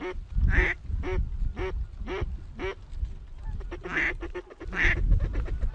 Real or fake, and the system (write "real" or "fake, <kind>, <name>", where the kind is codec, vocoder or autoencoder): real